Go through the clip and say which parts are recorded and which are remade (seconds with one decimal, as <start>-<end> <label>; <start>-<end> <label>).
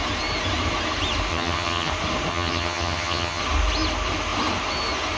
0.0-1.3 recorded; 1.3-1.9 remade; 1.9-2.3 recorded; 2.3-3.4 remade; 3.4-5.2 recorded